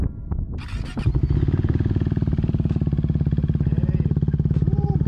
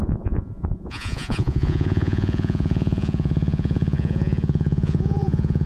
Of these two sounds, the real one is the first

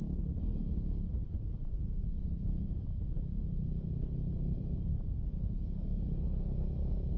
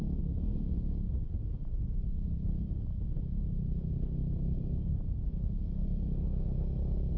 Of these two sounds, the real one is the second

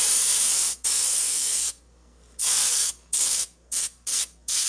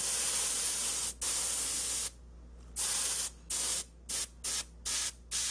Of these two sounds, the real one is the second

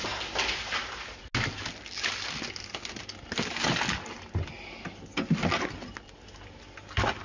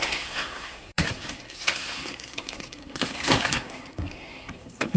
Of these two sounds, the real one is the first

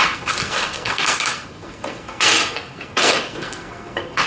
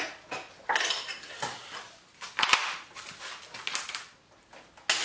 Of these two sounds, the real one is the second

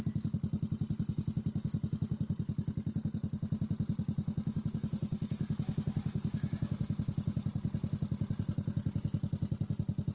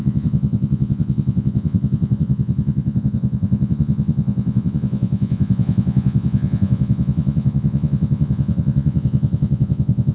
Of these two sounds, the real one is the first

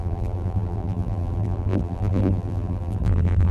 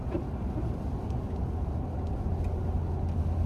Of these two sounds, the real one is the second